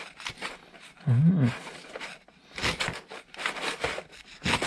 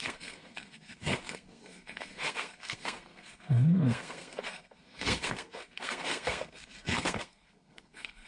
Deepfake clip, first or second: second